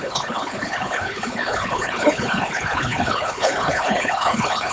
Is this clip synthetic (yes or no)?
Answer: yes